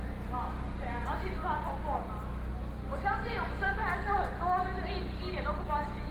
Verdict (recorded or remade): recorded